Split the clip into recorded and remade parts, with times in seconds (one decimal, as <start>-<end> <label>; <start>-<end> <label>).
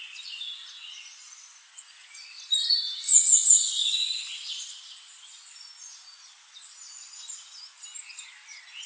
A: 0.0-8.9 recorded